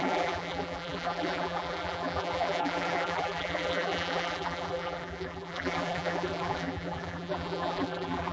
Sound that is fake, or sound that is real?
fake